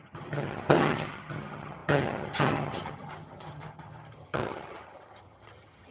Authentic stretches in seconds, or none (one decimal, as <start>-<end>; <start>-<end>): none